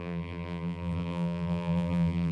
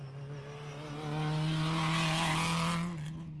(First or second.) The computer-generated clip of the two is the first